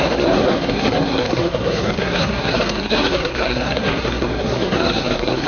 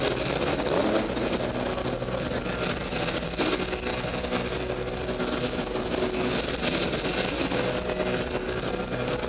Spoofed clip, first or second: first